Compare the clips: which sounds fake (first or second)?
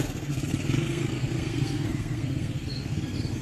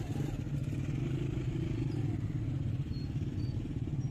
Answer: first